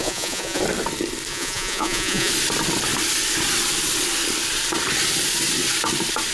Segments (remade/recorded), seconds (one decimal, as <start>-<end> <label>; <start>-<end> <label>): 0.0-0.6 remade; 0.6-1.3 recorded; 1.3-2.3 remade; 2.3-6.3 recorded